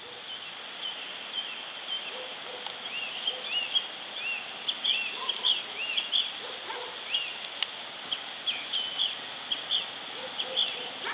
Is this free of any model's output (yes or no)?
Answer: yes